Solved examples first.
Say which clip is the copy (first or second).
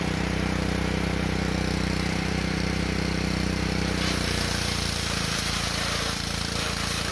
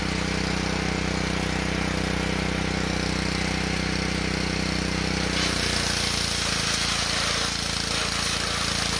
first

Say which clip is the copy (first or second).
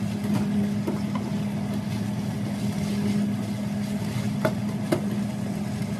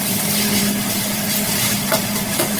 second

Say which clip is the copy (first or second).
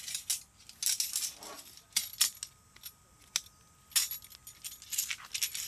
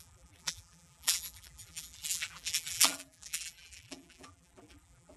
second